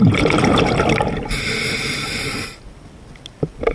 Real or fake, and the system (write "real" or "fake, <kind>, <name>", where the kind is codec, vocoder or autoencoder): real